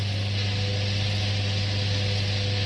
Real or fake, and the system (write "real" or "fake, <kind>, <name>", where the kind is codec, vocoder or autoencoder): real